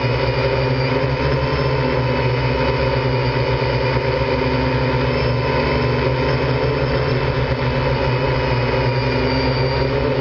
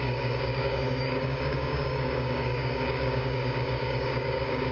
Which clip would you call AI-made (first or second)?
second